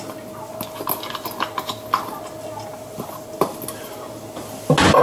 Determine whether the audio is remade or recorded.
recorded